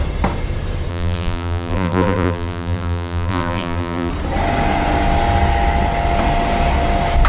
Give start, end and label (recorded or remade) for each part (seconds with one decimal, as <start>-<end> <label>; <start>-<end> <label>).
0.0-0.9 recorded; 0.9-4.1 remade; 4.1-7.3 recorded